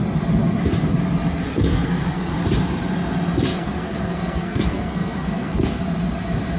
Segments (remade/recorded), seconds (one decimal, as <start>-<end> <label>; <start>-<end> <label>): 0.0-1.5 recorded; 1.5-2.3 remade; 2.3-3.5 recorded; 3.5-5.8 remade; 5.8-6.6 recorded